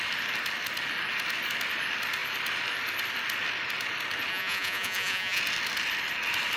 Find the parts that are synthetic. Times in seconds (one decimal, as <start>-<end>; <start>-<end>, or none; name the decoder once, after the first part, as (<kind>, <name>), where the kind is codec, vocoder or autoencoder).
4.3-5.4 (vocoder, Vocos)